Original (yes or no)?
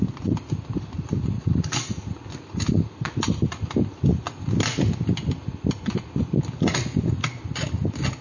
yes